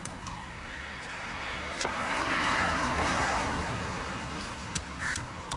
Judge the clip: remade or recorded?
remade